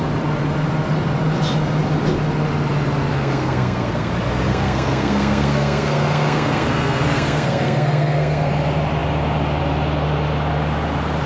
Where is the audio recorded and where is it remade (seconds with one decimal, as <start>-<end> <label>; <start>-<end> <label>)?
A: 0.0-3.1 recorded; 3.1-4.1 remade; 4.1-4.5 recorded; 4.5-8.5 remade; 8.5-11.3 recorded